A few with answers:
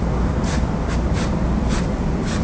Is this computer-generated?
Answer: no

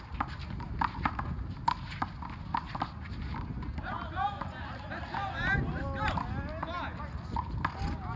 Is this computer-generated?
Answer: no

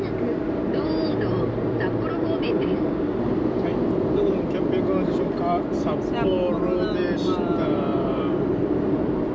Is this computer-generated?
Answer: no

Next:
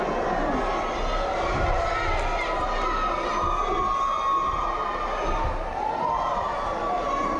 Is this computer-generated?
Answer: no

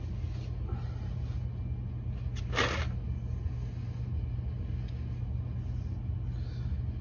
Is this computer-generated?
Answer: no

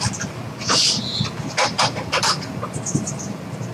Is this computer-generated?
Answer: no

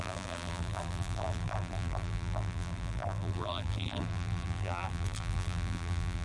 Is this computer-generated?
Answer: yes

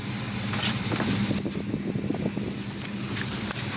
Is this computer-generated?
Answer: no